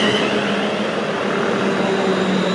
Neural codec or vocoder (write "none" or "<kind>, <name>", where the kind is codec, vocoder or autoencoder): none